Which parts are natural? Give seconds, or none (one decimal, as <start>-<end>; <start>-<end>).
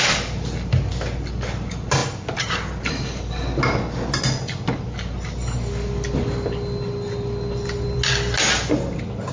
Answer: 0.0-9.3